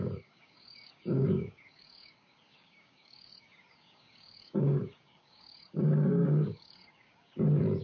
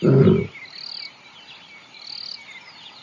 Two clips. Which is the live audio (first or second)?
second